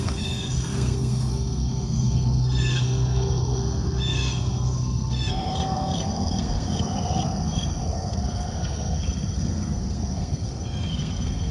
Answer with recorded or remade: remade